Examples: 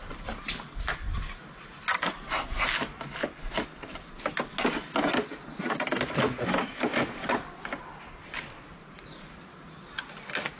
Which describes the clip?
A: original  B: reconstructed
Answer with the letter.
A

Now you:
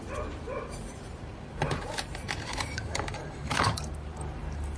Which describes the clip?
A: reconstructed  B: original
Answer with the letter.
A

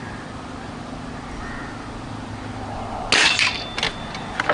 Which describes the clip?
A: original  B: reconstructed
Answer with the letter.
A